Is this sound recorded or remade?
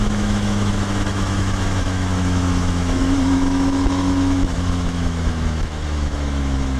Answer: remade